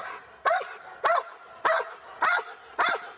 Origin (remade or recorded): recorded